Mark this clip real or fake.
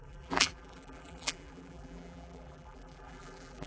fake